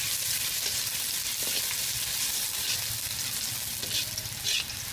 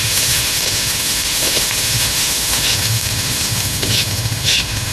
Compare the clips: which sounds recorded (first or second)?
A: first